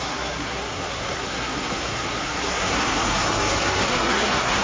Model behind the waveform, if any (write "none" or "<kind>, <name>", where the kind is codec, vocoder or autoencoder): codec, SNAC